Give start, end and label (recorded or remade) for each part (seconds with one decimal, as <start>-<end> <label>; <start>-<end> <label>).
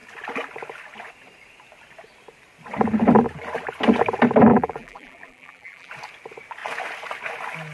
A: 0.0-4.5 recorded; 4.5-5.9 remade; 5.9-7.7 recorded